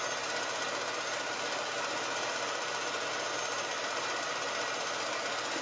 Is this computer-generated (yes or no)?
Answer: no